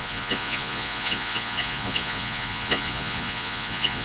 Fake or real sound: fake